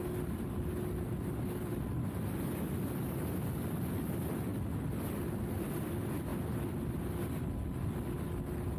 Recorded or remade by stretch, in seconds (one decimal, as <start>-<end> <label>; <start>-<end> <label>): 0.0-8.8 recorded